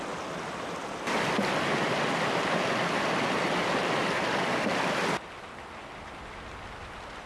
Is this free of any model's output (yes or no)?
yes